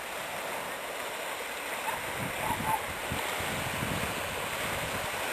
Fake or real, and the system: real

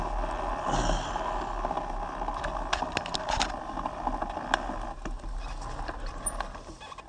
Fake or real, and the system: real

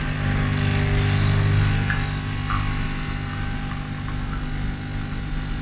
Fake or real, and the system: real